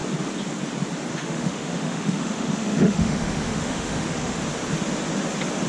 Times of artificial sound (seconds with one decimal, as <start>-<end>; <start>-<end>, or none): 1.1-4.4